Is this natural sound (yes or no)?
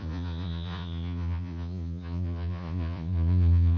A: no